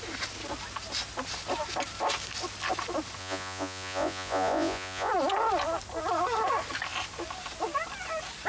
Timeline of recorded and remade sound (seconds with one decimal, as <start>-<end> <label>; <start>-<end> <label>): 0.0-3.2 recorded; 3.2-5.1 remade; 5.1-8.5 recorded